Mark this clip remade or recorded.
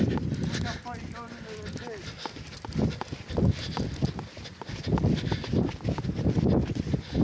recorded